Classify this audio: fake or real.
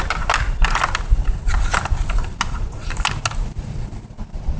real